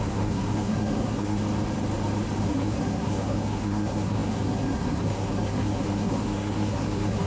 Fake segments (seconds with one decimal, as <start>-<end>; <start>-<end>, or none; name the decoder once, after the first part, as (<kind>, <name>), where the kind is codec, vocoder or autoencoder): 0.0-1.4 (codec, SNAC); 2.4-7.3